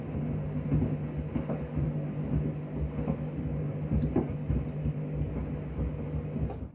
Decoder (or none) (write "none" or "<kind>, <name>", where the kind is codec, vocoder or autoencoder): none